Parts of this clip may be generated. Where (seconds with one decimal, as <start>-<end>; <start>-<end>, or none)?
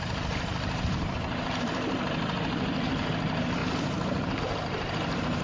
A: 0.0-5.4